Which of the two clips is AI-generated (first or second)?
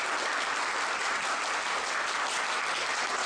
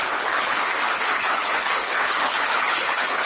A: second